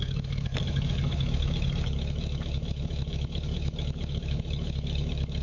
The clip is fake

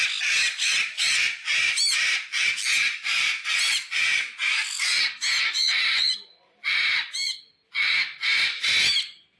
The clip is real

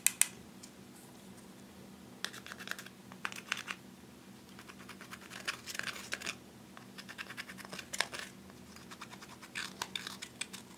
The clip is real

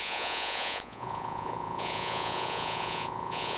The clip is fake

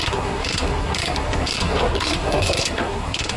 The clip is fake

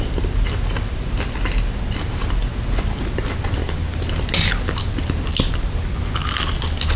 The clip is real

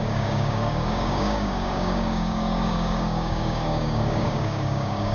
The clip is fake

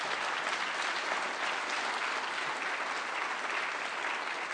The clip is real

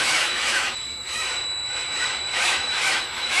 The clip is fake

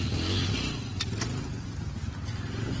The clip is real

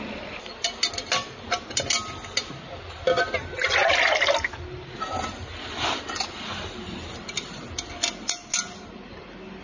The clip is real